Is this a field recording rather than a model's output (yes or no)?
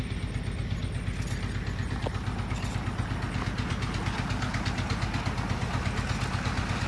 yes